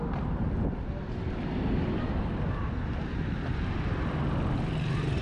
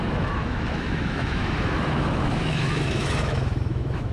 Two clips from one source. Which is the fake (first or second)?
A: second